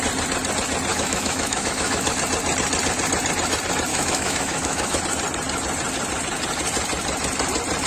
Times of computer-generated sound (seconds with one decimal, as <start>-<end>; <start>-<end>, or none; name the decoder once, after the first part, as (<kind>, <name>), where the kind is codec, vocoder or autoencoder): 0.9-2.1 (autoencoder, DAC-VAE); 3.9-5.0